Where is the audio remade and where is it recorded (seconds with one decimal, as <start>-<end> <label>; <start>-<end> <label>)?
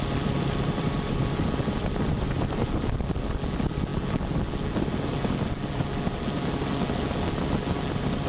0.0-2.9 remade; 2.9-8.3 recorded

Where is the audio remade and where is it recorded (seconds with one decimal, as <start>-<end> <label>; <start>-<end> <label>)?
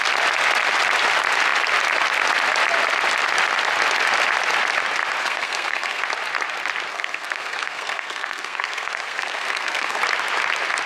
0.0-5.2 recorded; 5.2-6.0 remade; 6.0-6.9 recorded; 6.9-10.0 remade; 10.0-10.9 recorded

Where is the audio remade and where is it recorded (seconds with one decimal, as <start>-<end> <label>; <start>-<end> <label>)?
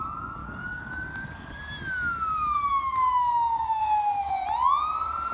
0.0-0.4 recorded; 0.4-1.6 remade; 1.6-2.3 recorded; 2.3-4.3 remade; 4.3-5.3 recorded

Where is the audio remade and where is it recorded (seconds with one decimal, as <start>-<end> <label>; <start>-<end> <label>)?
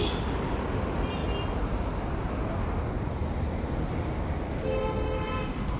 0.0-5.8 recorded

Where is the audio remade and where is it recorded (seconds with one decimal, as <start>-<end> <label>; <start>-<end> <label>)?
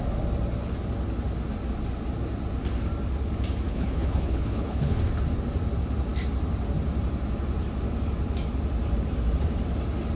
0.0-3.7 recorded; 3.7-5.0 remade; 5.0-10.2 recorded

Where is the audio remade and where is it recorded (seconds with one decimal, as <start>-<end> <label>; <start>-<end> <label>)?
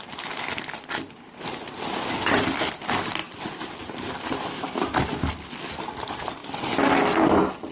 0.0-7.7 recorded